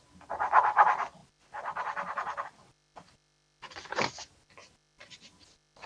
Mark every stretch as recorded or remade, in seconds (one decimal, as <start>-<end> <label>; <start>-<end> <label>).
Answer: 0.0-1.2 recorded; 1.2-4.5 remade; 4.5-5.9 recorded